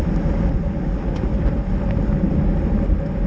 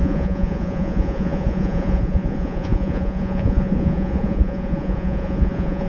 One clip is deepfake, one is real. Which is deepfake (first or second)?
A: second